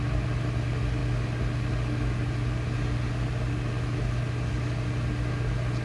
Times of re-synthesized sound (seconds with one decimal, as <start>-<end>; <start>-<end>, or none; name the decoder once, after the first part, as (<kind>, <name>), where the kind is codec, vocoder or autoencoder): none